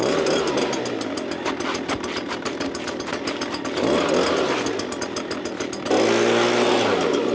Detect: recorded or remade recorded